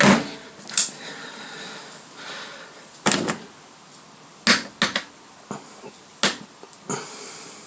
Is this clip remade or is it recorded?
recorded